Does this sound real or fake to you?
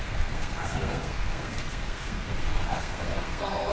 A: fake